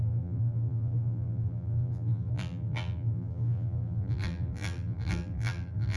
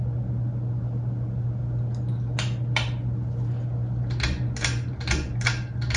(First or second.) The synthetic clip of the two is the first